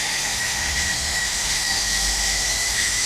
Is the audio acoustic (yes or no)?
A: no